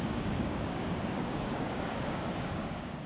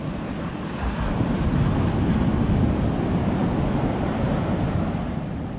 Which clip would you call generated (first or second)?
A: first